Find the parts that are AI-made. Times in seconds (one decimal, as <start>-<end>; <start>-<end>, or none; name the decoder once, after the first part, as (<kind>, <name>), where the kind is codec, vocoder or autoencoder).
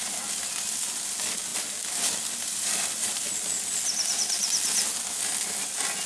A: none